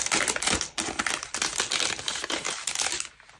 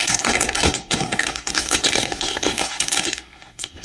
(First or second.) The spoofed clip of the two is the second